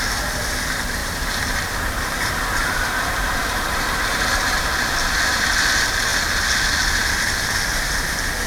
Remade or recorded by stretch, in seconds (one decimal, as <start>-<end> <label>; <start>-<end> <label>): 0.0-1.0 recorded; 1.0-4.6 remade; 4.6-8.5 recorded